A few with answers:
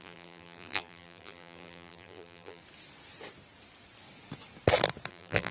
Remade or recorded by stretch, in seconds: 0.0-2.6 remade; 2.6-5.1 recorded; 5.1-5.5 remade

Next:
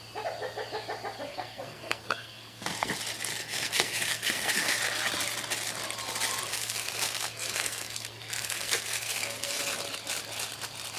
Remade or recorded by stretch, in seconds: 0.0-1.3 recorded; 1.3-2.9 remade; 2.9-3.3 recorded; 3.3-4.8 remade; 4.8-6.5 recorded; 6.5-9.6 remade; 9.6-11.0 recorded

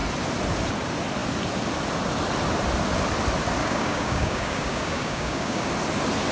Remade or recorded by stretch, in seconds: 0.0-3.6 recorded; 3.6-5.7 remade; 5.7-6.3 recorded

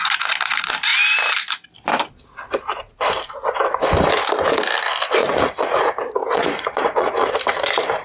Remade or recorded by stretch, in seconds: 0.0-5.2 recorded; 5.2-5.8 remade; 5.8-6.2 recorded; 6.2-7.3 remade; 7.3-8.0 recorded

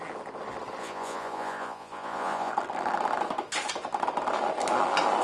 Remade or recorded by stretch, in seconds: 0.0-0.8 recorded; 0.8-2.5 remade; 2.5-5.2 recorded

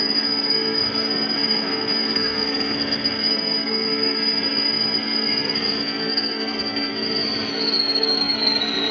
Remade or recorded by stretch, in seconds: 0.0-8.9 remade

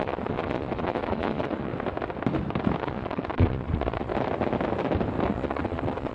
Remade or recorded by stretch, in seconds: 0.0-1.7 remade; 1.7-2.8 recorded; 2.8-4.1 remade; 4.1-5.3 recorded; 5.3-6.1 remade